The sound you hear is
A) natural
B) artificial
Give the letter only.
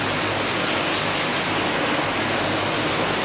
A